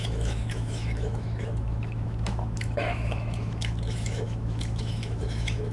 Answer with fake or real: fake